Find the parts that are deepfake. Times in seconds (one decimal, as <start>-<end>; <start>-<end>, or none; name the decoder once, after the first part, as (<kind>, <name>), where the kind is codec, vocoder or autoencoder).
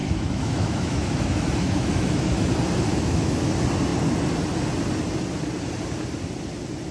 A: 0.0-2.5 (autoencoder, DAC-VAE); 2.9-3.5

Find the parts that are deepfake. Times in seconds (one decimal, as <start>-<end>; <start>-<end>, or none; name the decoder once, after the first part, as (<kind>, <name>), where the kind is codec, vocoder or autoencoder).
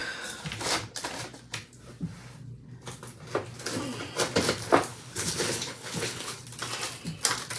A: 4.9-6.4 (codec, HILCodec)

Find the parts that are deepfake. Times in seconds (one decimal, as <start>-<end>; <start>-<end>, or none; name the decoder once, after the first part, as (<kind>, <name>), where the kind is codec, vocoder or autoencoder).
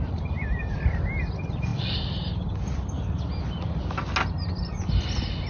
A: none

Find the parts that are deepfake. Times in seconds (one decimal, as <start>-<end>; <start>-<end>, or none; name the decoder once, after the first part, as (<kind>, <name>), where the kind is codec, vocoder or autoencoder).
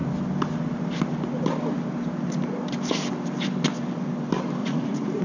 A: 4.6-5.2 (vocoder, Vocos)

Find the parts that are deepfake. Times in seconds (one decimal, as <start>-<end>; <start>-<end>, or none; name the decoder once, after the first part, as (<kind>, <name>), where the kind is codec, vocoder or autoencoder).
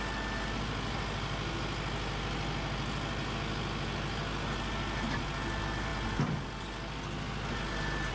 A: none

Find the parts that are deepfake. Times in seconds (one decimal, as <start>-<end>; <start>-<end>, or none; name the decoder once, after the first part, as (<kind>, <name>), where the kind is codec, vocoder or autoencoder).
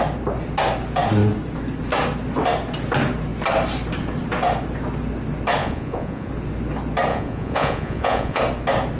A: 5.6-6.3 (vocoder, Vocos); 7.1-8.4